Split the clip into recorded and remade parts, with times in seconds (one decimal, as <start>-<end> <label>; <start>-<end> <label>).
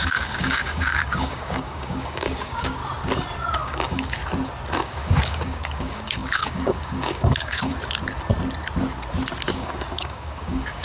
0.0-2.8 remade; 2.8-3.6 recorded; 3.6-4.2 remade; 4.2-4.8 recorded; 4.8-7.7 remade; 7.7-9.5 recorded; 9.5-10.8 remade